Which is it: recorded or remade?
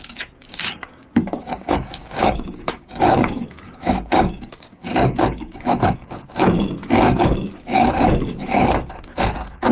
remade